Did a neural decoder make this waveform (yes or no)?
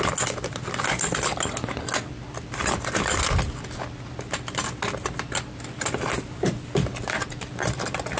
no